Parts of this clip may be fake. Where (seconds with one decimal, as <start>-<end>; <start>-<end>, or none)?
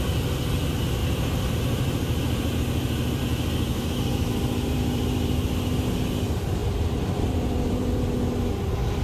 1.0-3.2; 3.7-5.8; 6.6-8.0